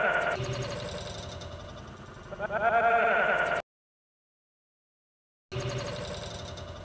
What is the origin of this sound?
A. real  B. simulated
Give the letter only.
A